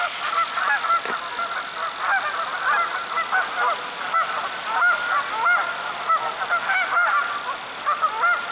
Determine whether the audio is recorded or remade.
recorded